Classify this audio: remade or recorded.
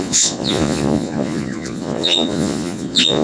remade